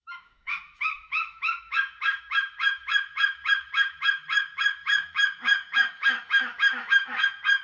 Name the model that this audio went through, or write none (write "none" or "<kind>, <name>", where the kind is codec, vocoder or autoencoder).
autoencoder, DAC-VAE